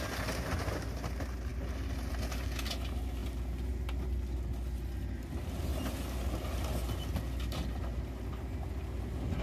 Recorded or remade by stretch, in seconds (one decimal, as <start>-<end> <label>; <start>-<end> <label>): 0.0-9.4 recorded